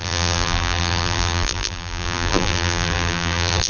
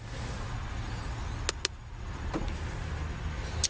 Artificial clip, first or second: first